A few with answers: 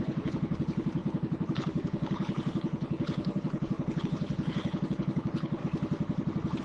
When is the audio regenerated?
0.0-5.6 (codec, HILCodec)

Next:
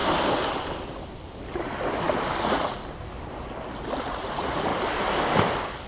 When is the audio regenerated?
2.4-2.8 (vocoder, Vocos); 4.0-4.7

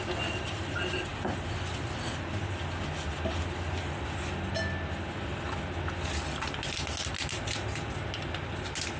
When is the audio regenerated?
none

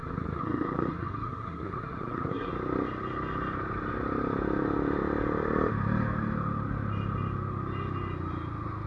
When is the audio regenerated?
0.0-2.5 (codec, SNAC)

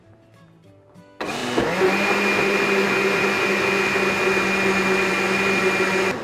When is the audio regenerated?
none

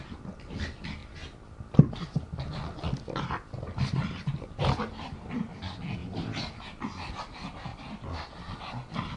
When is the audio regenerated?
none

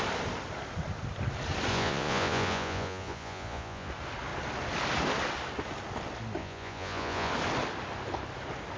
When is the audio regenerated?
1.7-3.9 (vocoder, Vocos); 6.4-7.3

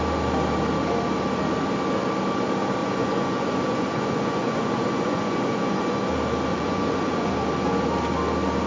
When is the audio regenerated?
2.8-6.0 (vocoder, Vocos); 6.5-7.3